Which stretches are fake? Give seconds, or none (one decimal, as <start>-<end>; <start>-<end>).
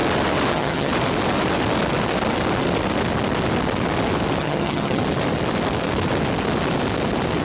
0.5-0.9; 4.4-5.0